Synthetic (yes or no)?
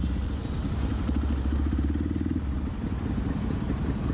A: no